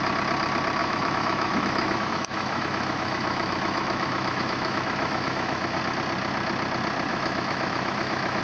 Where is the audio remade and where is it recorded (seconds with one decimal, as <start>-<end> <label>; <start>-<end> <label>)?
0.0-0.8 recorded; 0.8-5.8 remade; 5.8-7.1 recorded; 7.1-8.4 remade